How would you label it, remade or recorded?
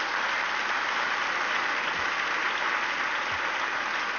recorded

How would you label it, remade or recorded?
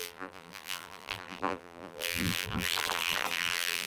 remade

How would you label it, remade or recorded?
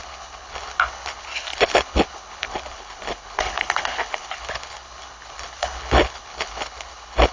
remade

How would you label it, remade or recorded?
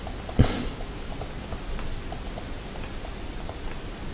recorded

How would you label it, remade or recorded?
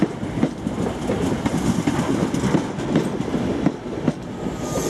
recorded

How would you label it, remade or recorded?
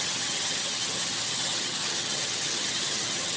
remade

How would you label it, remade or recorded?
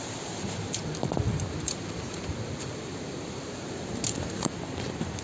remade